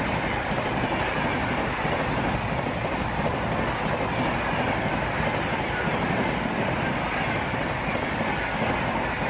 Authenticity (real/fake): real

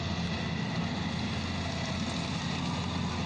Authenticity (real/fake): real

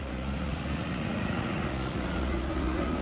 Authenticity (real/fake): fake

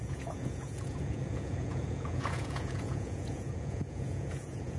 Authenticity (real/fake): fake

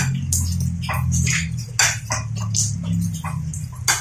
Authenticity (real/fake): real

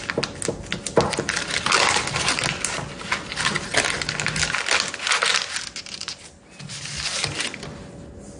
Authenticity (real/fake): real